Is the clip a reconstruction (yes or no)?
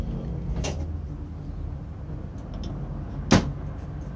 no